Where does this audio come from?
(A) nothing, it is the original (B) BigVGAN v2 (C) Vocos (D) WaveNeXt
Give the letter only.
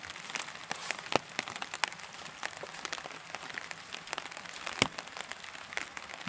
A